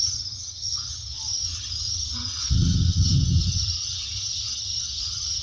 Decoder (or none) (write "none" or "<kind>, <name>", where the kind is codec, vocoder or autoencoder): vocoder, HiFi-GAN